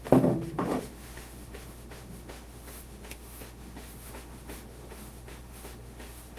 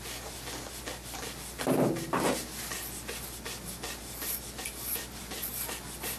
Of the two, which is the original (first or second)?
second